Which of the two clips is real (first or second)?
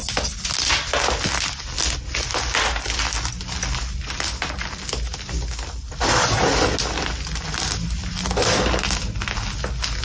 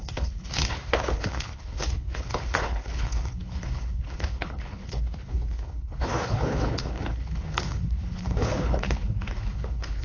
first